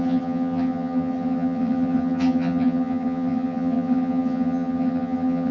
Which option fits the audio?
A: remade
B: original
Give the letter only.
A